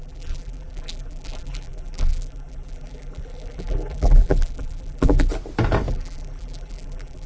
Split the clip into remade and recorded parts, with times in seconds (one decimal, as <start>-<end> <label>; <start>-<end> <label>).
0.0-5.3 remade; 5.3-5.9 recorded; 5.9-7.3 remade

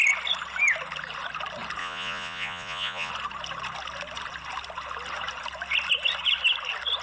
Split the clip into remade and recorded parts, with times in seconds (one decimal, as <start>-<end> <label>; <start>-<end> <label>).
0.0-1.8 recorded; 1.8-3.1 remade; 3.1-7.0 recorded